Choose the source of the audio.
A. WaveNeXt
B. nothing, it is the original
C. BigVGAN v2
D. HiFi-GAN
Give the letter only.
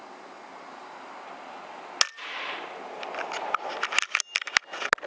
B